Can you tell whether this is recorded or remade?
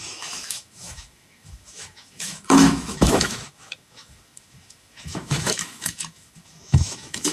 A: remade